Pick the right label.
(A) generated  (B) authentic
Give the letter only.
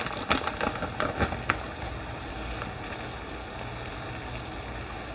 B